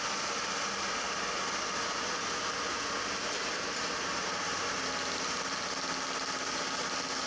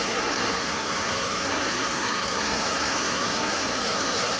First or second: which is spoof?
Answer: second